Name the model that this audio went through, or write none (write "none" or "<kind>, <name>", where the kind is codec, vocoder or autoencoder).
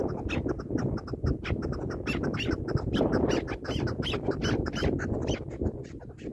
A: none